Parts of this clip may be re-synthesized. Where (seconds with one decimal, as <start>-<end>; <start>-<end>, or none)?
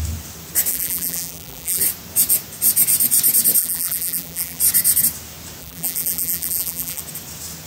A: 0.7-1.8; 3.6-4.6; 5.6-7.0